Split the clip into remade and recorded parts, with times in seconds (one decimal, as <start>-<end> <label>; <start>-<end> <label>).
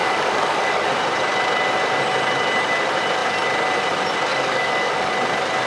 0.0-0.9 remade; 0.9-4.3 recorded; 4.3-5.1 remade; 5.1-5.7 recorded